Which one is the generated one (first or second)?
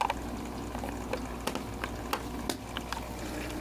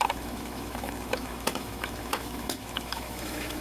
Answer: second